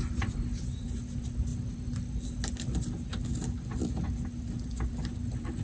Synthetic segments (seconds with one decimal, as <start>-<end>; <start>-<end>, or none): none